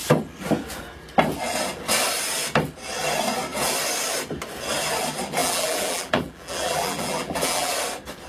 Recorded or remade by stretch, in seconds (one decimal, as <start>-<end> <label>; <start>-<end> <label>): 0.0-5.4 recorded; 5.4-7.7 remade; 7.7-8.3 recorded